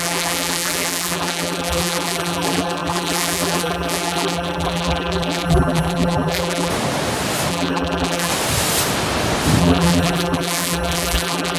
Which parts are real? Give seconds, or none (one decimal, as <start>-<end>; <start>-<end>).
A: 6.7-7.5; 8.3-9.6